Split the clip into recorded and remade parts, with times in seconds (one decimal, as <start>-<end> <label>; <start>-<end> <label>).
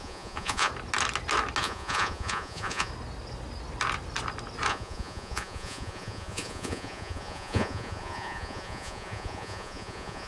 0.0-0.7 remade; 0.7-1.6 recorded; 1.6-2.9 remade; 2.9-4.7 recorded; 4.7-10.3 remade